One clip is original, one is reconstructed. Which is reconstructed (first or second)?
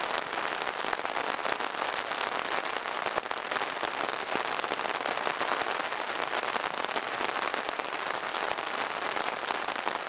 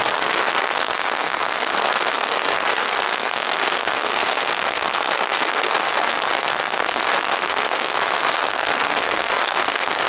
second